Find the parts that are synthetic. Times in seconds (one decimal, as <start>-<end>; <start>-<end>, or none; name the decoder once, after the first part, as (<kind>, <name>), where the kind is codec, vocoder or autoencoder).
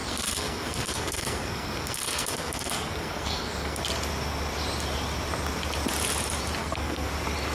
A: 0.0-3.8 (codec, SNAC); 6.6-7.1